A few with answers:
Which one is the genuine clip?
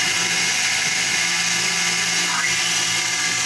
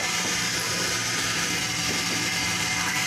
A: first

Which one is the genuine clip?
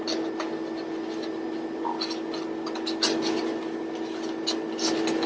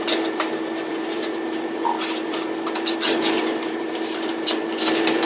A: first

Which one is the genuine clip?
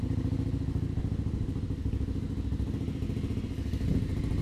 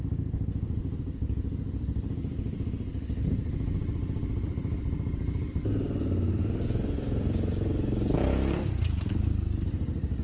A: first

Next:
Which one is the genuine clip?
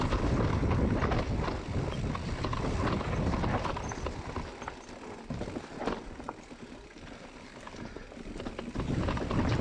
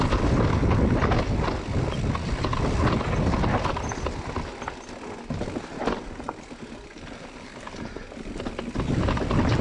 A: second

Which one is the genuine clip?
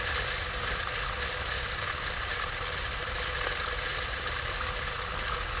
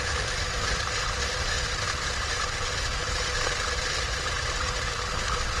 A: first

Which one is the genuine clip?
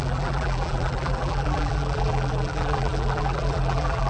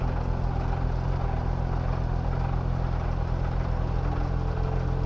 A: second